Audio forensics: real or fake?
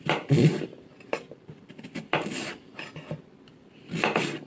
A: fake